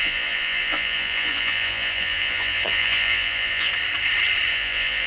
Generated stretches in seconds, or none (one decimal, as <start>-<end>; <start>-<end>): 0.0-3.7; 4.5-5.1